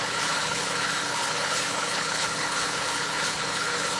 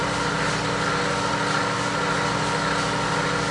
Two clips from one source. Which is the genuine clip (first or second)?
second